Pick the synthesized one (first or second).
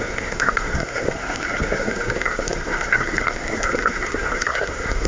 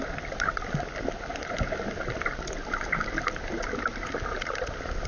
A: first